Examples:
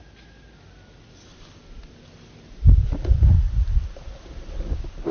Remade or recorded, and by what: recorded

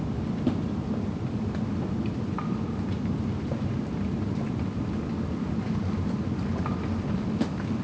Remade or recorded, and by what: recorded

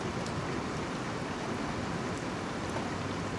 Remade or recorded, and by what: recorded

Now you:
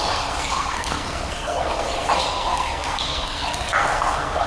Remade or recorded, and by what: remade, codec, SNAC